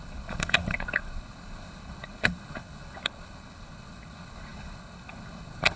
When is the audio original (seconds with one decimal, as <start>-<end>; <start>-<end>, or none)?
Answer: none